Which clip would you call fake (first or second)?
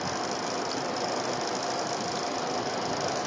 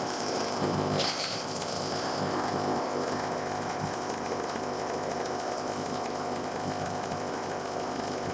second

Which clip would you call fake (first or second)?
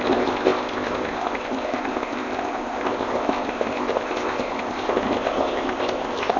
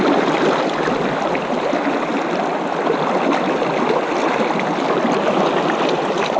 first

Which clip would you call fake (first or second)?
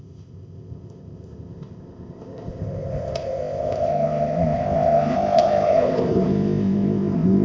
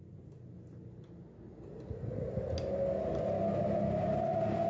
first